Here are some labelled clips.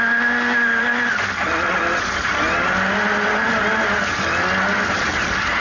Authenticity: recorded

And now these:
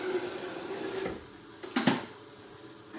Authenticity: recorded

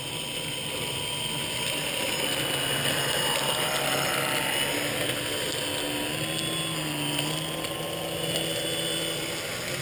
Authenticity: recorded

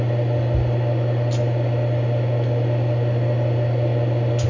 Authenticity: recorded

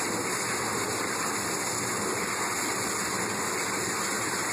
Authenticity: recorded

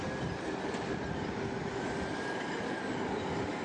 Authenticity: remade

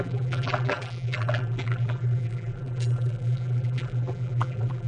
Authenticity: remade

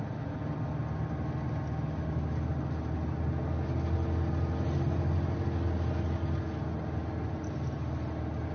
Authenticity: recorded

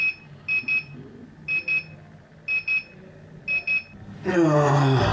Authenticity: recorded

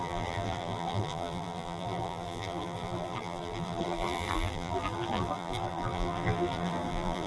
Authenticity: remade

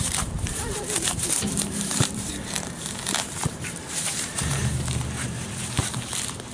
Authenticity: remade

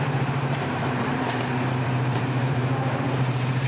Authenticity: remade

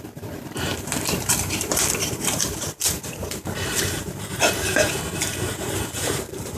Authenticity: remade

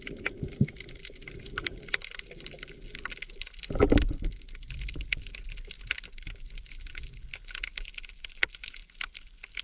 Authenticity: remade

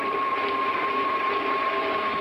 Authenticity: recorded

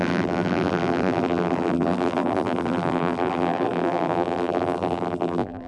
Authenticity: remade